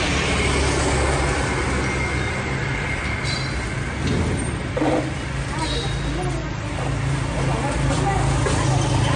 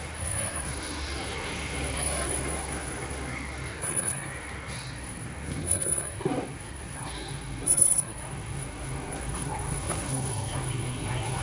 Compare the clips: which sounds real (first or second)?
first